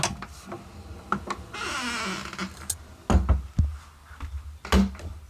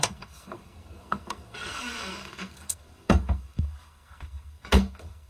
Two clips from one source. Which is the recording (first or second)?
first